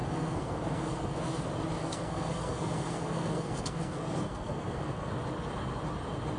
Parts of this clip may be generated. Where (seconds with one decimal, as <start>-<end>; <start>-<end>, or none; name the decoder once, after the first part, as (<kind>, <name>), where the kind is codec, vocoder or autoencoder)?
0.0-1.2 (codec, SNAC); 1.8-5.1